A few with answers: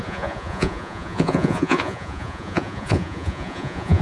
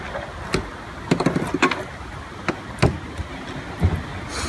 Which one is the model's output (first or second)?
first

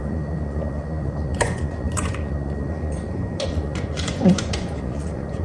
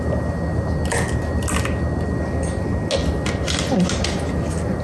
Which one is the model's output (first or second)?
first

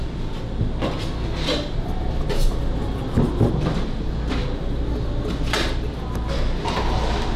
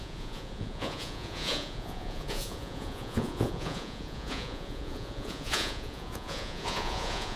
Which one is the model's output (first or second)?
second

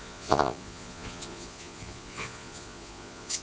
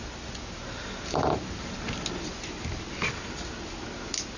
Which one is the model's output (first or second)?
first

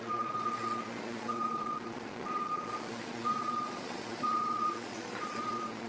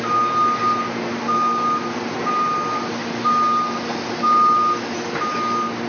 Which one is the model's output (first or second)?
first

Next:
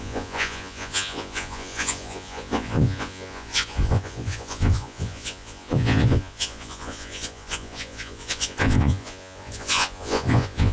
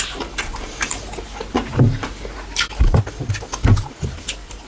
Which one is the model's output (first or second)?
first